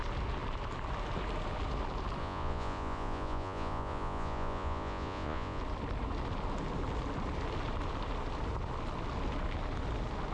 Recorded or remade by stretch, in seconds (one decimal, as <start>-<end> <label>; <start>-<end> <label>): 0.0-2.2 recorded; 2.2-5.6 remade; 5.6-10.3 recorded